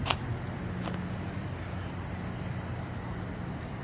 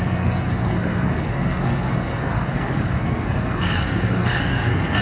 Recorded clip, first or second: first